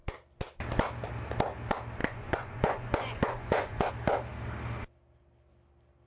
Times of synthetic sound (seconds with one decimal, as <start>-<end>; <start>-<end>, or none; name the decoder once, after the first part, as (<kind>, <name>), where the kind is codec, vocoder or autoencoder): 2.0-3.9 (vocoder, Vocos)